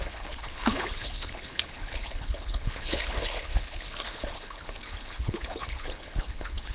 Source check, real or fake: fake